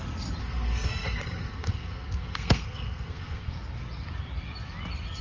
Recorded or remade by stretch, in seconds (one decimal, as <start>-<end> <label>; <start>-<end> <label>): 0.0-0.4 recorded; 0.4-3.5 remade; 3.5-5.2 recorded